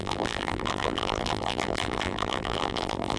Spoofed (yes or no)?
yes